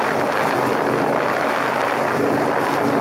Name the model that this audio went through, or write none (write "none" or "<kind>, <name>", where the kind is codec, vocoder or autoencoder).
none